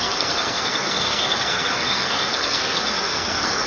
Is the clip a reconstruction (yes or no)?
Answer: yes